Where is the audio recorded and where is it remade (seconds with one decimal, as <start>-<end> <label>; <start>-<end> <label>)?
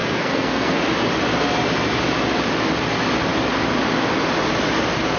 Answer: 0.0-0.8 remade; 0.8-5.2 recorded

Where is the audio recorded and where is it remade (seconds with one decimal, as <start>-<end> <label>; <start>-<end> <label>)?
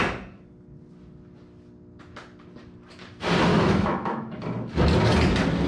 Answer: 0.0-3.5 recorded; 3.5-4.4 remade; 4.4-5.7 recorded